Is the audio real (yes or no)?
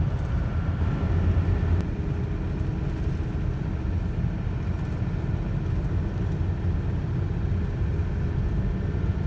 yes